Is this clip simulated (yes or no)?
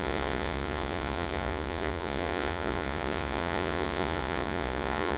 yes